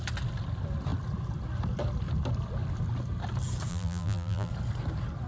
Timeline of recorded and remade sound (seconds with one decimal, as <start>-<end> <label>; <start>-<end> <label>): 0.0-3.7 recorded; 3.7-4.5 remade; 4.5-5.3 recorded